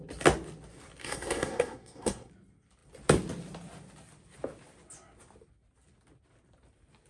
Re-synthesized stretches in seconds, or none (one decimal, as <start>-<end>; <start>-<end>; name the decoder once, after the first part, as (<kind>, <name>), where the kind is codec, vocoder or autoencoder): 1.0-2.3 (codec, SNAC)